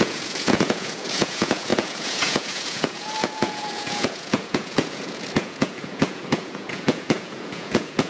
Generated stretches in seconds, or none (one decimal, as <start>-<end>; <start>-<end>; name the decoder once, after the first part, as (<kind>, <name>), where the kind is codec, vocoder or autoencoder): 0.0-8.1 (vocoder, Vocos)